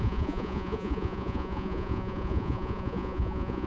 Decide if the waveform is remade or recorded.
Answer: remade